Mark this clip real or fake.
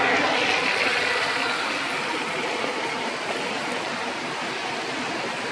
real